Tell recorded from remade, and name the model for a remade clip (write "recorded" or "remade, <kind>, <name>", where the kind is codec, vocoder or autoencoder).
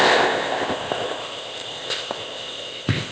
remade, codec, ZipCodec